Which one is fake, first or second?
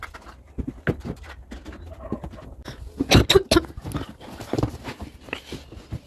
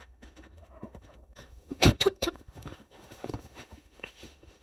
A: second